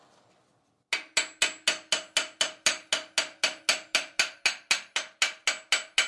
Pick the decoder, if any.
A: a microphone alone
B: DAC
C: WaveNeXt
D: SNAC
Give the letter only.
A